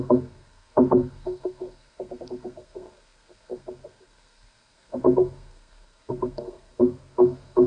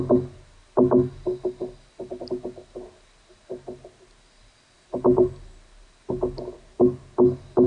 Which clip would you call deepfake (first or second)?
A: first